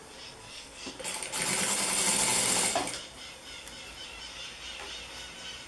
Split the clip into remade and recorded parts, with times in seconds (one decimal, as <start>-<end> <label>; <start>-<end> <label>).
0.0-0.4 recorded; 0.4-0.9 remade; 0.9-5.7 recorded